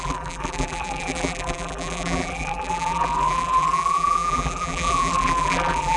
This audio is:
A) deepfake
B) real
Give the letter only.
A